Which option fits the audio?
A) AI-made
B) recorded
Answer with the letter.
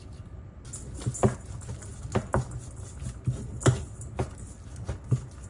B